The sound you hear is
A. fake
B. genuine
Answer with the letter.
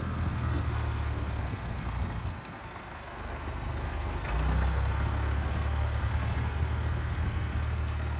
A